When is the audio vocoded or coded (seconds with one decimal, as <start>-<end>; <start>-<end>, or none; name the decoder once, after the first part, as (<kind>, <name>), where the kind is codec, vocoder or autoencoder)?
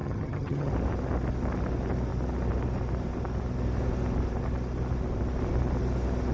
0.0-0.7 (vocoder, HiFi-GAN)